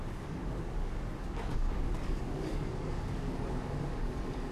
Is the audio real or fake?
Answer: fake